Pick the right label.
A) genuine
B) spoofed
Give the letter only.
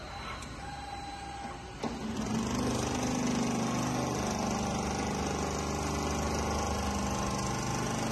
A